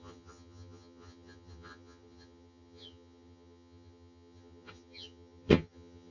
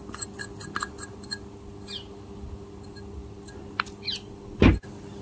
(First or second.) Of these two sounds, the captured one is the second